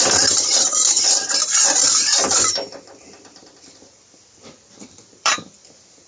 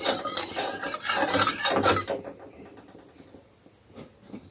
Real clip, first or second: second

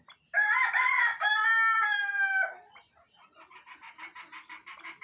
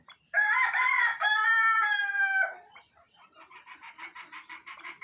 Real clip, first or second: first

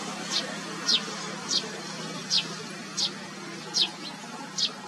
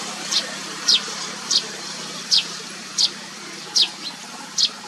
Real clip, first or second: first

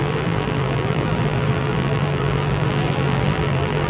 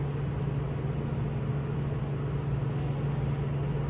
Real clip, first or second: second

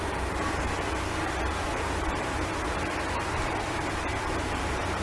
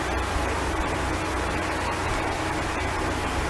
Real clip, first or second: second